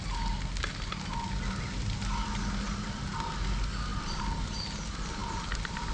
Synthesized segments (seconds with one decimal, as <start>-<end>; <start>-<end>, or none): 5.2-5.9